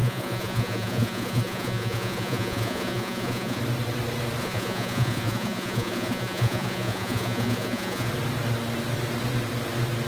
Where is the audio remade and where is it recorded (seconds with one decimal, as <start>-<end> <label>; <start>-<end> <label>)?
0.0-3.6 remade; 3.6-4.4 recorded; 4.4-8.1 remade; 8.1-10.1 recorded